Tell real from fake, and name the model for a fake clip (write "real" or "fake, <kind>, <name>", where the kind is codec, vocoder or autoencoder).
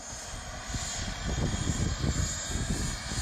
real